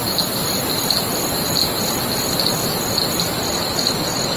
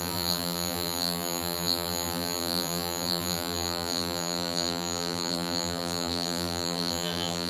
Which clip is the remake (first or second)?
second